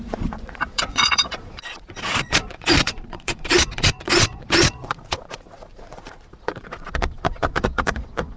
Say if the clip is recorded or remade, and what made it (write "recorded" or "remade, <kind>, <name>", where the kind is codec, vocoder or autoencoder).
remade, vocoder, Vocos